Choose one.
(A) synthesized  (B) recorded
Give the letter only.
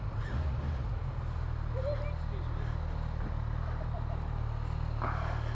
B